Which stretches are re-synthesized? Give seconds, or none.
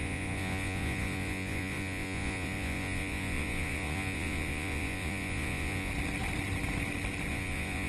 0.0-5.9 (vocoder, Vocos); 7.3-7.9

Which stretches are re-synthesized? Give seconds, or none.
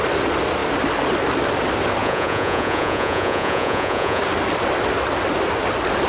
2.0-4.2 (vocoder, Vocos)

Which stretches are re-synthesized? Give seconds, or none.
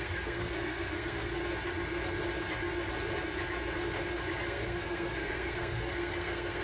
0.0-1.4 (codec, SNAC); 4.4-6.6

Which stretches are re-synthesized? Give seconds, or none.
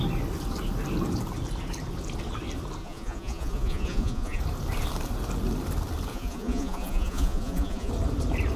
2.8-4.4 (vocoder, Vocos); 6.1-7.9